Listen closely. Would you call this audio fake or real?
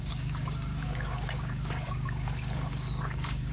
fake